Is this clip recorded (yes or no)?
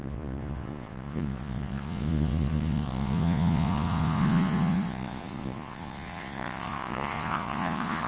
no